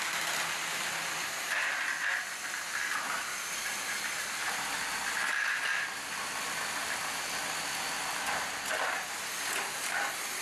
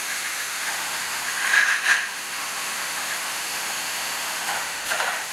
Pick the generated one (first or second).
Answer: second